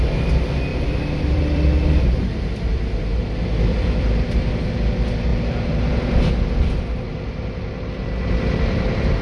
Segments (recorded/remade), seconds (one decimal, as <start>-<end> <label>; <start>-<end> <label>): 0.0-0.7 recorded; 0.7-1.9 remade; 1.9-3.1 recorded; 3.1-4.5 remade; 4.5-5.3 recorded; 5.3-6.3 remade; 6.3-9.2 recorded